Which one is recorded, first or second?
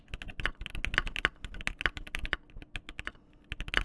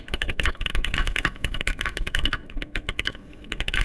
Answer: first